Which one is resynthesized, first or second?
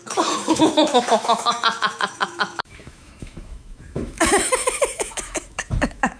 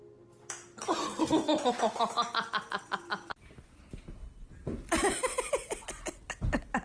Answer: first